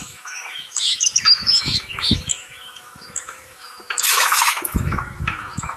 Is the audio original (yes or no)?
no